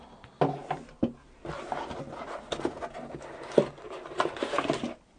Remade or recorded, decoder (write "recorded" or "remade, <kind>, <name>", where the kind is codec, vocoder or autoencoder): recorded